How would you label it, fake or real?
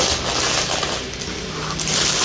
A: real